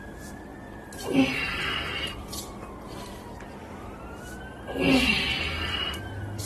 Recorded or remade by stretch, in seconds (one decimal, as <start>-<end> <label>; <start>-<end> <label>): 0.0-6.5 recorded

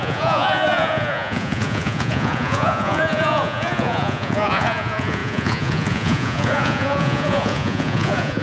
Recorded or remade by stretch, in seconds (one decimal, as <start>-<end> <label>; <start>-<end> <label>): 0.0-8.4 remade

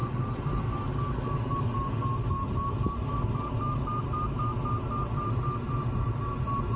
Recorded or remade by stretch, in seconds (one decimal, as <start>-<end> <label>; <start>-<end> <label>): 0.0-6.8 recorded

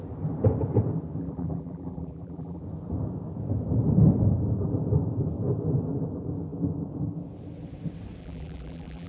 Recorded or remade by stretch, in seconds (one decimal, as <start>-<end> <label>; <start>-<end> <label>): 0.0-1.2 recorded; 1.2-2.6 remade; 2.6-8.2 recorded; 8.2-9.1 remade

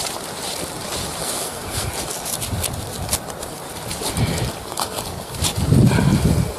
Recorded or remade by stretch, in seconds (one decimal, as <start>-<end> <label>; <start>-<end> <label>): 0.0-1.2 recorded; 1.2-1.9 remade; 1.9-4.6 recorded; 4.6-5.4 remade; 5.4-6.6 recorded